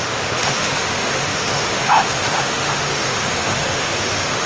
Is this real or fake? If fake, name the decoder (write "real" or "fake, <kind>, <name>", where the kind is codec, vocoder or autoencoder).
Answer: fake, autoencoder, DAC-VAE